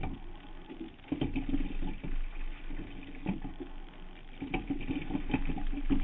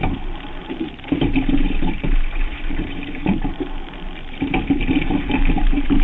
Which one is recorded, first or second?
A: first